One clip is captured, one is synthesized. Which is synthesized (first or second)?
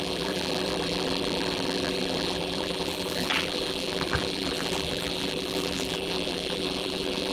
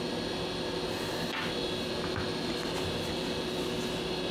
first